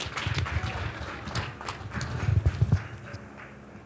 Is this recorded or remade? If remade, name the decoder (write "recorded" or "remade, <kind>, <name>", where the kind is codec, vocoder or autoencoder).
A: recorded